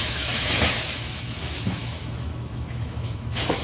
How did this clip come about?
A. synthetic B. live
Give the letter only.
A